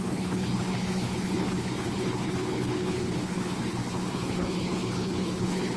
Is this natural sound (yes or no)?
no